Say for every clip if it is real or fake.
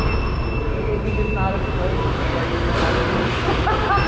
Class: real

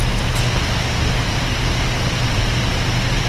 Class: real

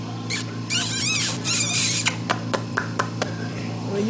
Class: fake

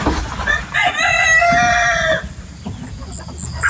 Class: real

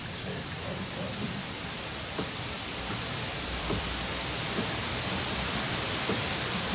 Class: fake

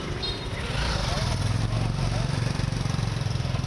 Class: real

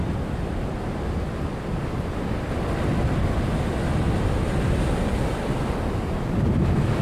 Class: real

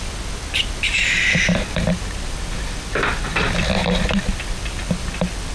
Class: real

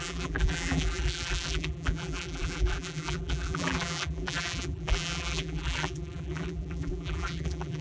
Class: fake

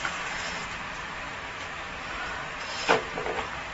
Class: fake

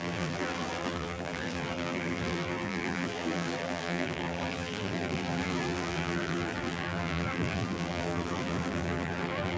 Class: fake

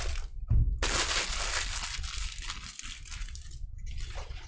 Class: real